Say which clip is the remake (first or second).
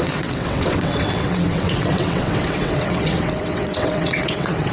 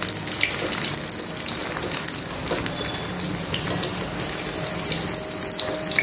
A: first